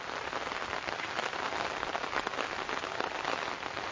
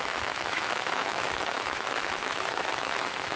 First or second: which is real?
first